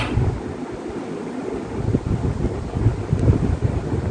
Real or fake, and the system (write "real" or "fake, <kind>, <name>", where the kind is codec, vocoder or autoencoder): real